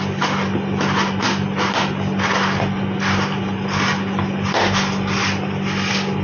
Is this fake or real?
real